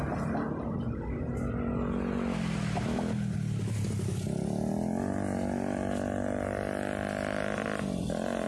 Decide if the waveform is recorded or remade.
recorded